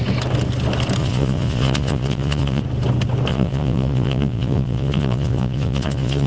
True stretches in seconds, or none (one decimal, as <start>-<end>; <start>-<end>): 0.0-1.0; 2.6-3.3